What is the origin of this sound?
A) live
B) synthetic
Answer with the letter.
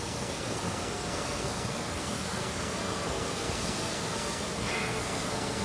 B